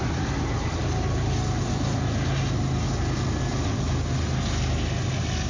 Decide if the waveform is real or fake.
real